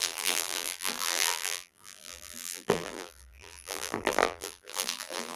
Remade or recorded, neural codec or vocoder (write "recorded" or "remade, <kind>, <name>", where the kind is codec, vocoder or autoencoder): remade, vocoder, BigVGAN v2